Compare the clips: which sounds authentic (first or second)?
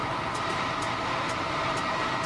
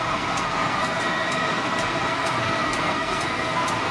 first